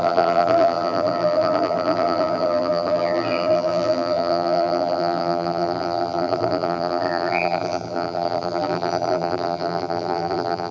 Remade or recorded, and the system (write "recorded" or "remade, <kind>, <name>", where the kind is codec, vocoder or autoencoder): remade, vocoder, BigVGAN v2